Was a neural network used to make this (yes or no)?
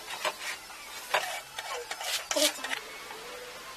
no